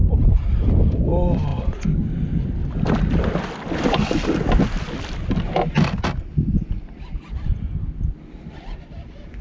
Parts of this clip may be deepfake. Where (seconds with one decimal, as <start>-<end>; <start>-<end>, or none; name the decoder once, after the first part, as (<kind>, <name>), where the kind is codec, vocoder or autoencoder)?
none